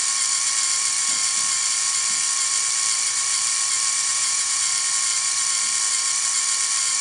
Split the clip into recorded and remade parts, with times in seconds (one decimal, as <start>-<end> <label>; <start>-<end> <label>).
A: 0.0-4.1 recorded; 4.1-4.6 remade; 4.6-7.0 recorded